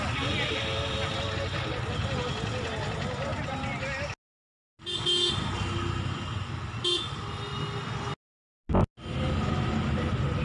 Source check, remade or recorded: recorded